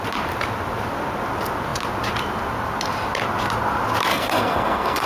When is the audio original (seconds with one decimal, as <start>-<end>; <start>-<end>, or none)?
0.0-4.1

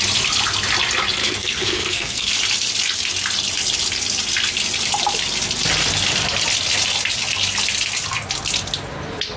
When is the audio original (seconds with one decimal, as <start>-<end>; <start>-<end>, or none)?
0.0-1.2; 2.3-9.4

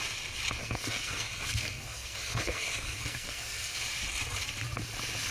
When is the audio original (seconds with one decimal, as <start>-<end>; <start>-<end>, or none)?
0.0-0.6; 3.8-5.3

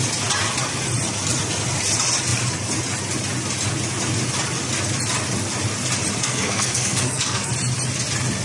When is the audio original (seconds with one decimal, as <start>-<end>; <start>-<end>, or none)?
0.0-6.2; 7.5-8.4

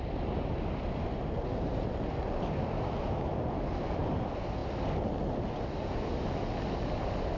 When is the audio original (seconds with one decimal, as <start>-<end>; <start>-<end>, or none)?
0.0-7.4